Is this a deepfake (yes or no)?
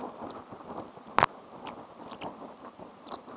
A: no